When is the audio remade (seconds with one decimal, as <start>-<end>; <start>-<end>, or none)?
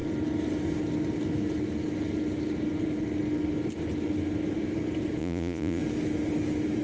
5.2-5.8